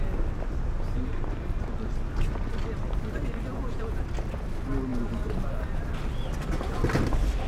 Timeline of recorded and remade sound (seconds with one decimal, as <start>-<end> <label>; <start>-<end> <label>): 0.0-3.5 recorded; 3.5-4.0 remade; 4.0-7.5 recorded